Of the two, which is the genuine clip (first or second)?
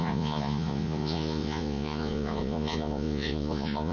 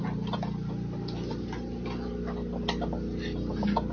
second